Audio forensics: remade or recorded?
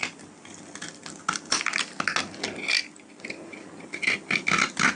recorded